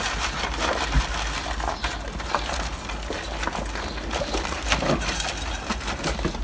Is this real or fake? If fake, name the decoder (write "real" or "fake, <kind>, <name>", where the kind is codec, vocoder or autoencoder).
real